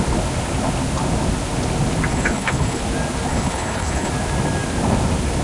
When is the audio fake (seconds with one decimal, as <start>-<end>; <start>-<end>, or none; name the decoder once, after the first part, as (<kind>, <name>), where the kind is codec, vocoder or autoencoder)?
2.1-2.8 (codec, HILCodec); 3.3-4.1